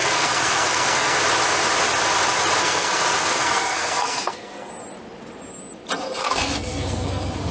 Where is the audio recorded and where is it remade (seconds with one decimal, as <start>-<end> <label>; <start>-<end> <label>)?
0.0-1.2 remade; 1.2-2.6 recorded; 2.6-4.7 remade; 4.7-6.2 recorded; 6.2-7.5 remade